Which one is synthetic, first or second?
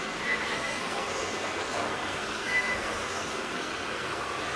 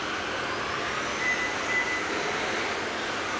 first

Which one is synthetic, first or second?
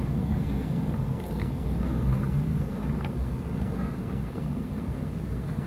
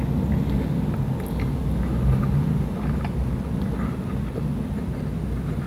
first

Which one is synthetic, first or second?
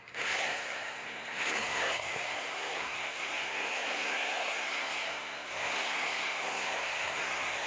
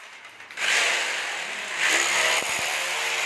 first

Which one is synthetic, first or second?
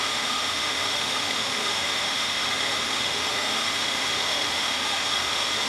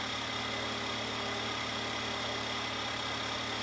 first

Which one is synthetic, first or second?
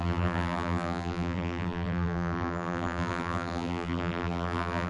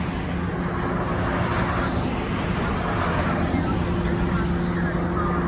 first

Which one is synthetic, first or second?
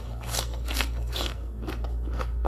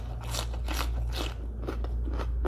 first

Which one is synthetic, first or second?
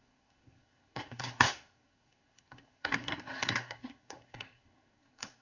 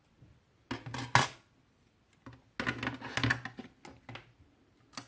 first